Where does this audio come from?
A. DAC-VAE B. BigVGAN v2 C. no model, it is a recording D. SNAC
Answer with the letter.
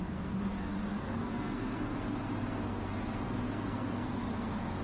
D